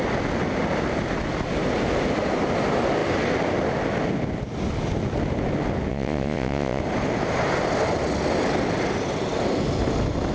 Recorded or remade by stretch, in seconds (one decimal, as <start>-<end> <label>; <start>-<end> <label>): 0.0-5.9 recorded; 5.9-6.8 remade; 6.8-10.3 recorded